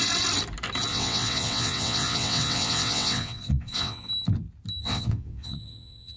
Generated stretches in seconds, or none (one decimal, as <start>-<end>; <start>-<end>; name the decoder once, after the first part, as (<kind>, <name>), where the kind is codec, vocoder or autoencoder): 0.9-4.1 (vocoder, WaveNeXt); 4.8-6.2